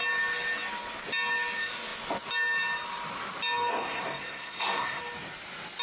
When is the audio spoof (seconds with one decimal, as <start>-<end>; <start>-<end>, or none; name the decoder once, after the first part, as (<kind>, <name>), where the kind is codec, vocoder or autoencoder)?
3.7-5.0 (codec, SNAC)